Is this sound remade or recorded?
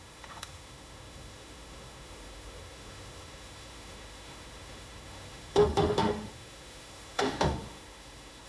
remade